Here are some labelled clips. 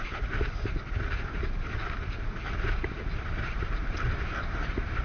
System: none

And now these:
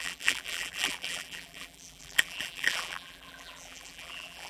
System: vocoder, BigVGAN v2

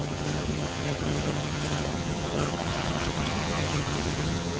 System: vocoder, HiFi-GAN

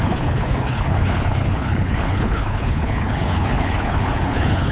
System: codec, HILCodec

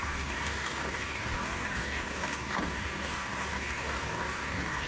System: codec, DAC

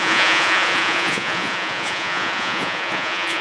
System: vocoder, Vocos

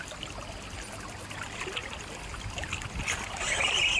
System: none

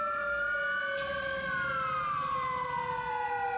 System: none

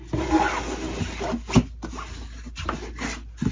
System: none